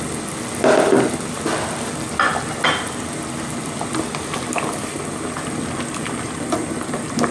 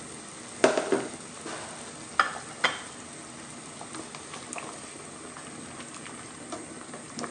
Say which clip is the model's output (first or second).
first